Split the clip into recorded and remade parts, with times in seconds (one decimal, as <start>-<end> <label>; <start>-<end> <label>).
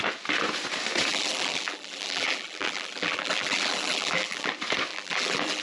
0.0-1.1 recorded; 1.1-4.5 remade; 4.5-4.9 recorded; 4.9-5.6 remade